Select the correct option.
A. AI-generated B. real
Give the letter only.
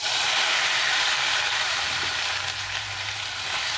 A